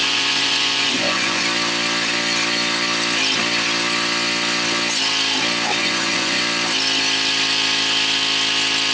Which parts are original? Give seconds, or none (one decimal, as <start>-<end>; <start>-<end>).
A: 1.4-5.8; 6.4-8.9